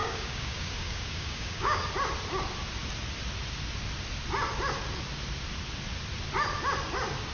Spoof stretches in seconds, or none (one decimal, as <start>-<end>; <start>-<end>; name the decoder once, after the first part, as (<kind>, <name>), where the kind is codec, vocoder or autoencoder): 0.0-1.8 (codec, DAC)